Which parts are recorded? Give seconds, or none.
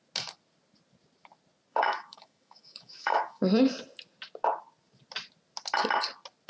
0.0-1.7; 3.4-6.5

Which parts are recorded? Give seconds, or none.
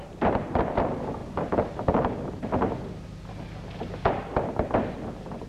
0.0-5.5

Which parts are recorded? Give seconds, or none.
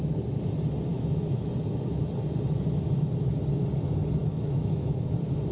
0.0-0.9; 1.5-4.2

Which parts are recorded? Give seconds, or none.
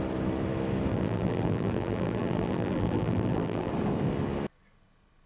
0.0-0.9; 3.7-5.3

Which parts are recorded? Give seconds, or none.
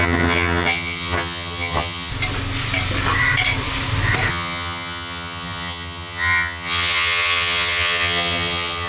2.1-4.3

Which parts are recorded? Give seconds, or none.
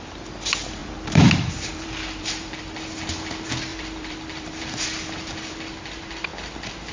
0.0-0.8; 2.6-3.7; 5.5-6.3